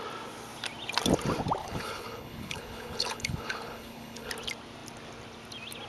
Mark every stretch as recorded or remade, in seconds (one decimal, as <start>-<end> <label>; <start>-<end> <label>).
0.0-1.6 recorded; 1.6-4.3 remade; 4.3-5.9 recorded